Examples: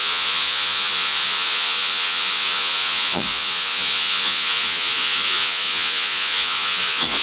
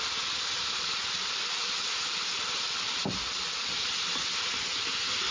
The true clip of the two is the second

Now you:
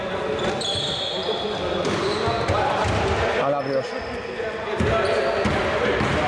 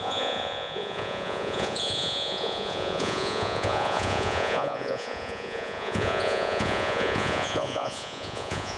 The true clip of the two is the first